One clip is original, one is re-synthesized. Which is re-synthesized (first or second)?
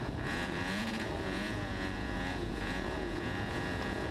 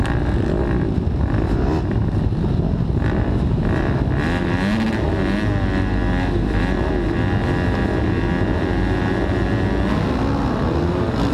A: first